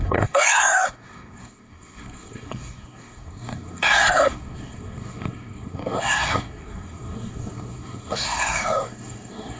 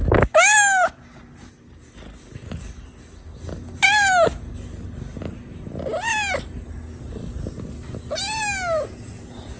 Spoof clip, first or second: first